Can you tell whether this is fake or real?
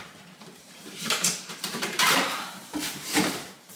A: fake